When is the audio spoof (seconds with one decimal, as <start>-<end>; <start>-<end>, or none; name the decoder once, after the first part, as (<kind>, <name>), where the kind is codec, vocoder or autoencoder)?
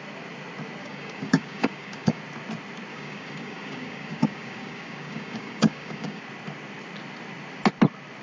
0.8-2.2 (codec, DAC); 2.9-6.2